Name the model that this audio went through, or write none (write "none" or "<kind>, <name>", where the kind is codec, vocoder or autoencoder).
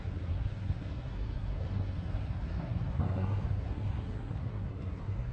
codec, SNAC